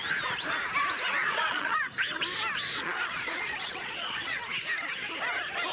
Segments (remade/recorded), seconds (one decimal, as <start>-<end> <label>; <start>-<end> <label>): 0.0-1.2 recorded; 1.2-1.8 remade; 1.8-2.7 recorded; 2.7-4.4 remade; 4.4-5.7 recorded